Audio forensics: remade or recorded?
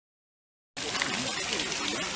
recorded